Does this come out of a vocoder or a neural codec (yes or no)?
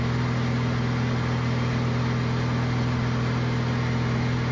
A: no